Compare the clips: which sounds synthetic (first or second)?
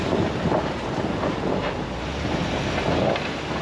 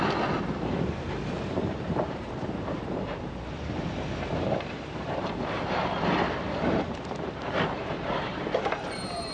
second